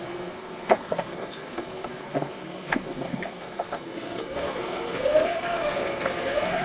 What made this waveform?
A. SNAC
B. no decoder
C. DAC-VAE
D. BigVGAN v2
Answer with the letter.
A